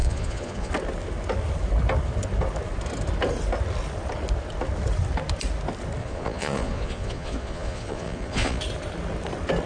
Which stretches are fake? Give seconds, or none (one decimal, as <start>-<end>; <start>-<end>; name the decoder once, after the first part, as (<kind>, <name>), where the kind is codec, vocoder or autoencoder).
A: 0.0-0.7 (vocoder, Vocos); 6.0-8.6